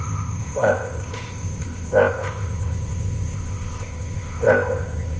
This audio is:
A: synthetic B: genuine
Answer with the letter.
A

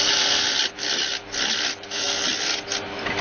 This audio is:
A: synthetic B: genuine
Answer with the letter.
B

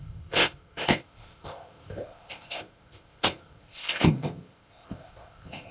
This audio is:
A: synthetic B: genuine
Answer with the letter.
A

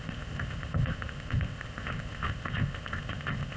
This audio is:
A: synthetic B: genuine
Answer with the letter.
A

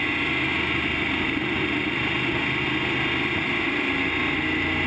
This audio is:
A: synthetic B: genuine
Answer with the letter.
B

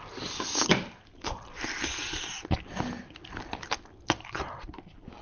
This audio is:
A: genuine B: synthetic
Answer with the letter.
A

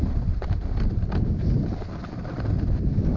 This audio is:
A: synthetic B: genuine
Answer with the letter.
B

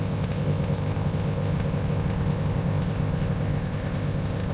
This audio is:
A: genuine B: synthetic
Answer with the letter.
B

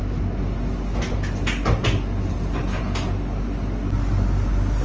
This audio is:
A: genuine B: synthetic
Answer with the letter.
A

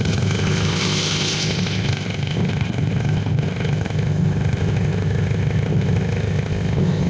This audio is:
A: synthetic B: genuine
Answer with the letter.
A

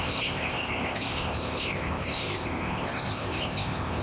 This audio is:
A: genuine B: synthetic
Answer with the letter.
B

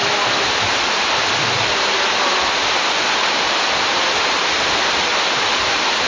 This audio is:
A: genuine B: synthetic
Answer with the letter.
A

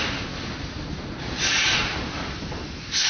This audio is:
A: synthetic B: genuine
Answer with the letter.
B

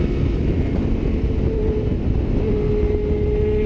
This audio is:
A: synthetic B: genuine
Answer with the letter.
B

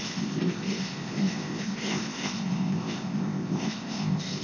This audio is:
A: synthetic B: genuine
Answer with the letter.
A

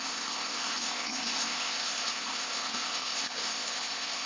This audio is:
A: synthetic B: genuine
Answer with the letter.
A